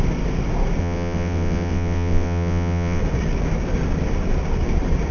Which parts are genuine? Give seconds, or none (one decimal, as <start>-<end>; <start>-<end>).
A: 0.0-0.8; 3.0-5.1